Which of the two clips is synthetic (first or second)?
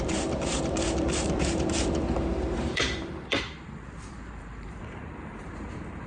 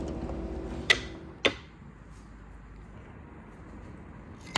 first